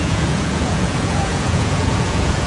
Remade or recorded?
remade